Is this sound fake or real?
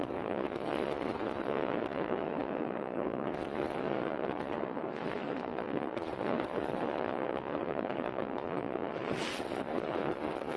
fake